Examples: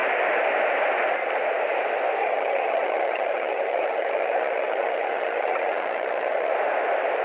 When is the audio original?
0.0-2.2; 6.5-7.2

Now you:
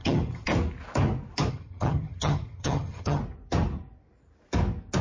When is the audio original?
0.5-1.5; 3.2-5.0

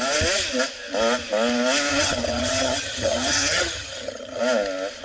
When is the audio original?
0.0-1.9; 4.4-5.0

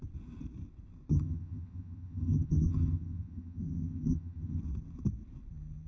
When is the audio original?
0.0-1.1; 4.6-5.9

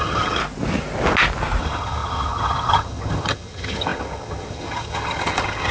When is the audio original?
0.4-1.6

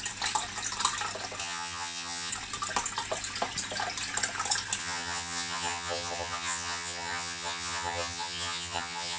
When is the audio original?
0.0-1.4; 2.3-4.8